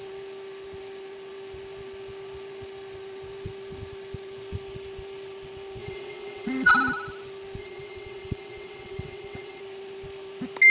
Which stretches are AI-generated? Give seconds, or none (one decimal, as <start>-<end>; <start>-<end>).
5.8-6.7; 7.6-9.6